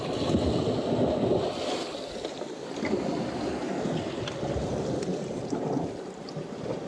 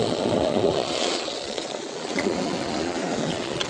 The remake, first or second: second